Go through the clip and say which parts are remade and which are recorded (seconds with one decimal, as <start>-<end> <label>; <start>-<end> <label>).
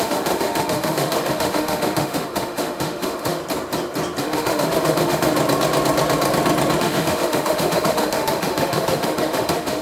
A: 0.0-3.4 remade; 3.4-4.2 recorded; 4.2-5.3 remade; 5.3-6.8 recorded; 6.8-9.8 remade